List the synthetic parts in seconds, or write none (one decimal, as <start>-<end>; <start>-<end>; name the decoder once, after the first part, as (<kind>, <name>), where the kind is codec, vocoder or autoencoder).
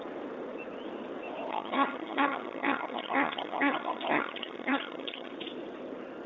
1.5-5.3 (vocoder, HiFi-GAN)